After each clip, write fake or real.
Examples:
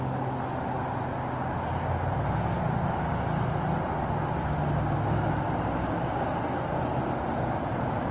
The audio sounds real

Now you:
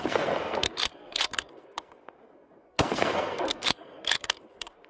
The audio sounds fake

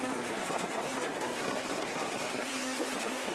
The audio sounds fake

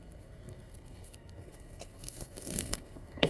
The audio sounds fake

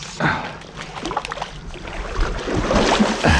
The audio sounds real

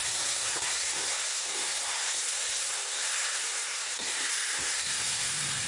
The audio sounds fake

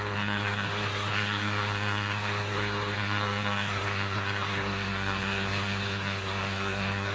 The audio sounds fake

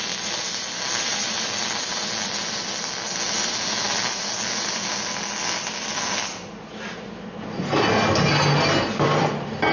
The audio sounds real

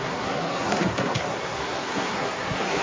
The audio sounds fake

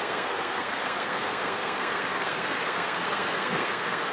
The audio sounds fake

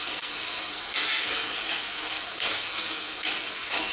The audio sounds fake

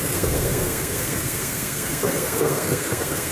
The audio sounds fake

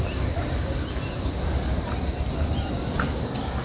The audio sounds real